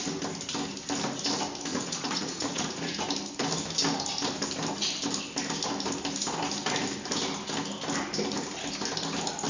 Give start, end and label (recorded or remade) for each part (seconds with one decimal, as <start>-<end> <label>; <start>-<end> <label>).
0.0-1.7 recorded; 1.7-3.0 remade; 3.0-9.5 recorded